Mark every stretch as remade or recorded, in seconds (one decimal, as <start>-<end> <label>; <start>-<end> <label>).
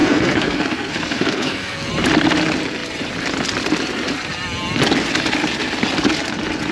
0.0-1.9 remade; 1.9-6.7 recorded